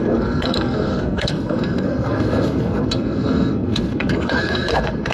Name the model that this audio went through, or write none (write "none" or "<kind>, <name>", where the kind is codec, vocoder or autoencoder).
codec, SNAC